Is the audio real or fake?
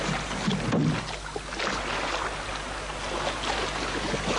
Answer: real